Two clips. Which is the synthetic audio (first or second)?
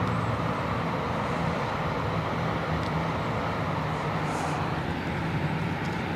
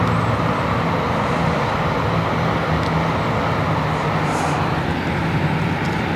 first